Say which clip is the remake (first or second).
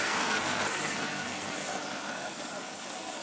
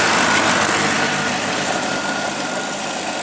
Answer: first